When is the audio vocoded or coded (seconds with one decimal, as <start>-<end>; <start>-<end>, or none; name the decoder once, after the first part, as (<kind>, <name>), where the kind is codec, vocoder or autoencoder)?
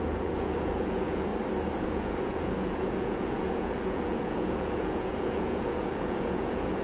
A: 0.0-1.3 (vocoder, Vocos); 1.8-6.8